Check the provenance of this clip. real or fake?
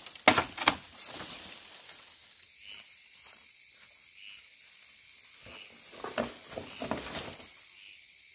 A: real